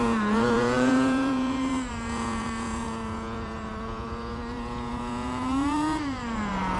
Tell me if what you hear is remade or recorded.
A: remade